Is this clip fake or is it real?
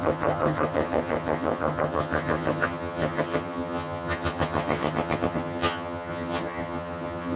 fake